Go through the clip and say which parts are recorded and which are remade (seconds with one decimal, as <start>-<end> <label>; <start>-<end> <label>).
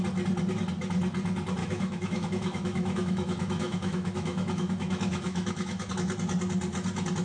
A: 0.0-1.6 recorded; 1.6-5.9 remade; 5.9-7.2 recorded